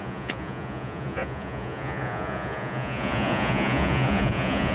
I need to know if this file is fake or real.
fake